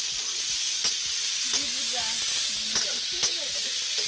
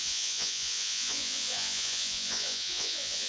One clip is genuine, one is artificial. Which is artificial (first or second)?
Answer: second